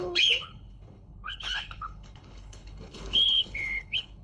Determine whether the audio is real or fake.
fake